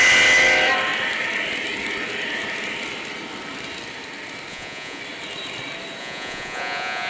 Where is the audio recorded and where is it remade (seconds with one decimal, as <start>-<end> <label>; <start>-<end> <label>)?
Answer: 0.0-4.5 recorded; 4.5-5.0 remade; 5.0-6.0 recorded; 6.0-7.1 remade